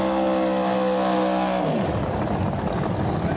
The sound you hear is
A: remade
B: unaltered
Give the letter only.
B